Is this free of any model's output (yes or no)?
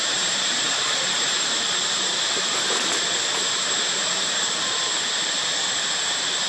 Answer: no